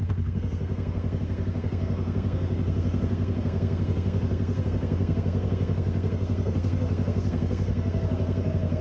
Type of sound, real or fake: fake